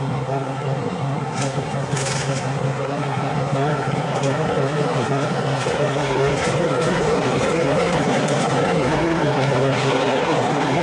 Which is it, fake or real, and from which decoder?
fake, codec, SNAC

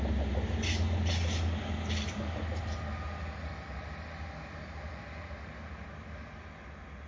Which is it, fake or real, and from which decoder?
real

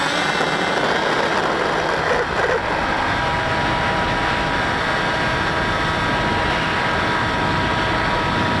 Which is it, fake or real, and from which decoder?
real